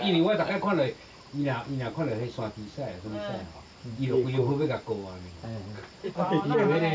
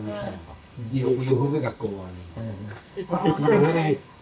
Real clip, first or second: first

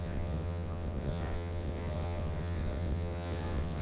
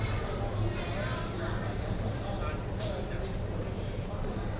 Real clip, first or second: second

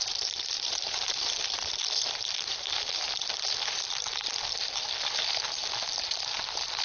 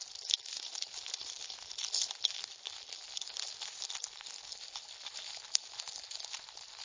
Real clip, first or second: second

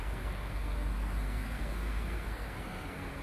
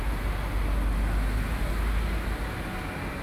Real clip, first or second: second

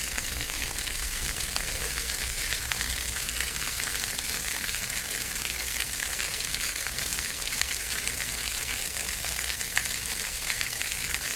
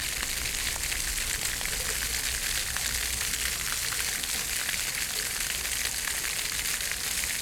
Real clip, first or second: second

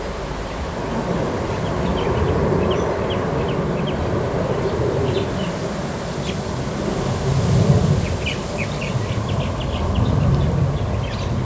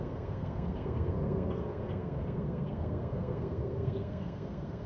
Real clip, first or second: first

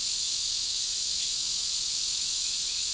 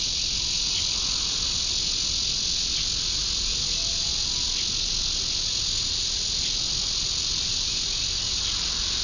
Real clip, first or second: second